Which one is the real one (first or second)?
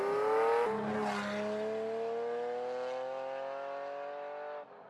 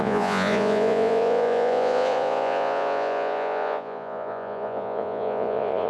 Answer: first